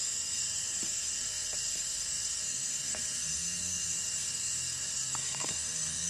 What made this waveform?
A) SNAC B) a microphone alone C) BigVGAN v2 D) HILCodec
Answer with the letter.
A